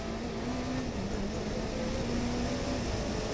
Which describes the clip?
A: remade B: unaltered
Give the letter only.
B